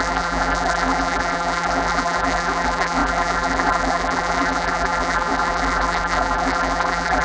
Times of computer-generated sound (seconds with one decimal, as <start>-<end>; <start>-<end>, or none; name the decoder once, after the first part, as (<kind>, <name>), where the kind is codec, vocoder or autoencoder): 0.0-7.2 (vocoder, BigVGAN v2)